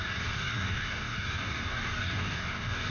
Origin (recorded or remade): remade